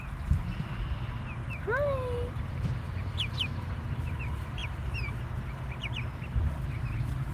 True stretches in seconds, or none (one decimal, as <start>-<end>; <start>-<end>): 1.4-2.4